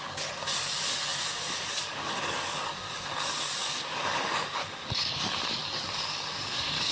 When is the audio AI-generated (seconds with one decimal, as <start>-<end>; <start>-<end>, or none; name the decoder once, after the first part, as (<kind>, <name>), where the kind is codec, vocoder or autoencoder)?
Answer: 0.0-6.9 (codec, DAC)